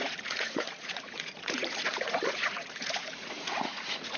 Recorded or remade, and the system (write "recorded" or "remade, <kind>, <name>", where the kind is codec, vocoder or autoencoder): remade, vocoder, Vocos